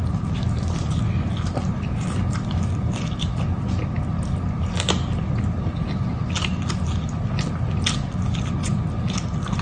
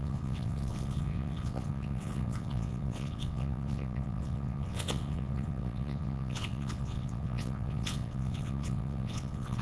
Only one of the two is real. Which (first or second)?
first